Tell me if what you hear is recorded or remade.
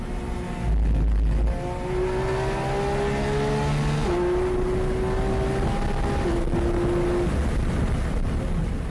recorded